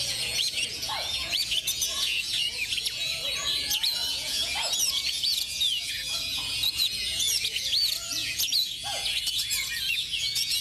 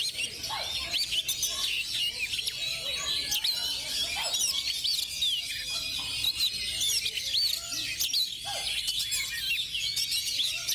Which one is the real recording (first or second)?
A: second